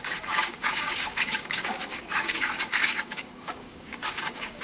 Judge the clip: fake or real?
fake